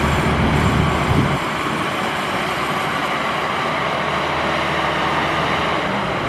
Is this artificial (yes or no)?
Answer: yes